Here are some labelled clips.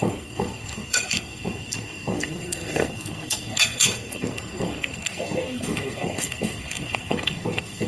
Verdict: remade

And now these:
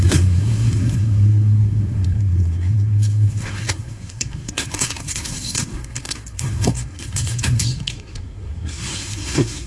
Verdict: remade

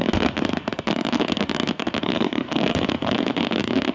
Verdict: remade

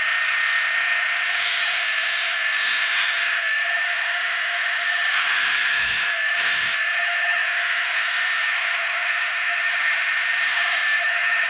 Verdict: remade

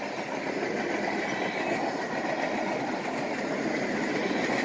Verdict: recorded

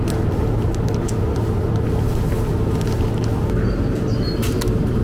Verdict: recorded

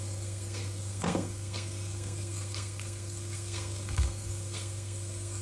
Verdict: remade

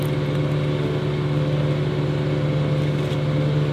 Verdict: recorded